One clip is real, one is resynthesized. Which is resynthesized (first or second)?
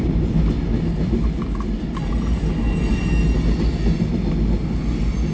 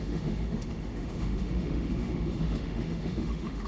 second